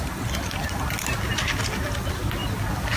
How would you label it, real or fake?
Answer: real